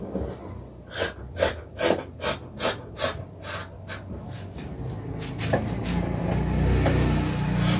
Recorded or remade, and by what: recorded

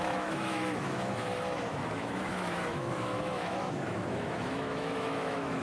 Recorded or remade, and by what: remade, autoencoder, DAC-VAE